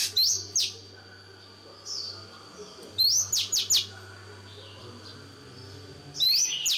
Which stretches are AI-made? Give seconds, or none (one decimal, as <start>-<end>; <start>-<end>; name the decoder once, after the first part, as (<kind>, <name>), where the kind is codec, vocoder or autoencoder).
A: 0.0-3.6 (vocoder, BigVGAN v2); 4.8-6.8